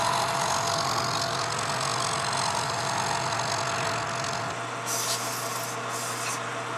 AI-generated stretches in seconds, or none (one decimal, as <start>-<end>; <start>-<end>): none